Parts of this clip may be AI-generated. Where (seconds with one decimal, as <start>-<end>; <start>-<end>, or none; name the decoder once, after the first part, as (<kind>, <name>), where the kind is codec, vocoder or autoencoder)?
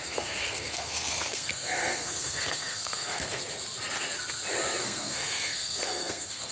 0.0-3.4 (codec, SNAC); 4.8-6.5